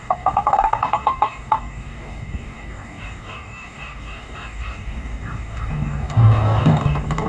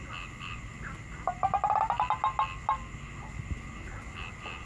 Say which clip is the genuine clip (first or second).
second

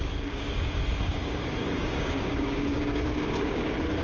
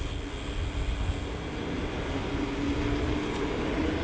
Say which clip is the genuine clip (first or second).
second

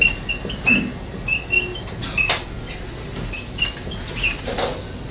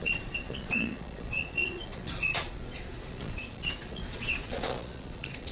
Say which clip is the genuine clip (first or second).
first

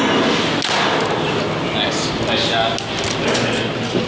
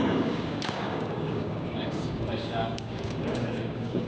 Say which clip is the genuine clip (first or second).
first